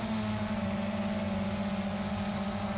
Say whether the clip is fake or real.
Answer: real